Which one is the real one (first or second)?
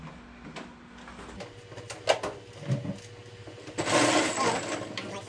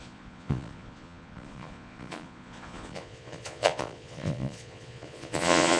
first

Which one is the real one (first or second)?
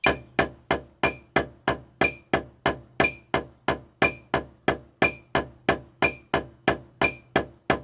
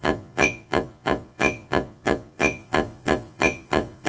first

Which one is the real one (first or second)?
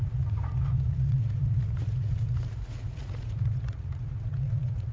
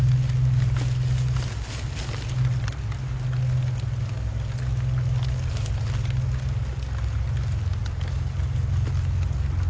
second